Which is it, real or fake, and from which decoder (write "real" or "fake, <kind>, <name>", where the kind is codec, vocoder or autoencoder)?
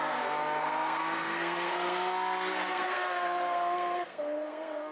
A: fake, codec, SNAC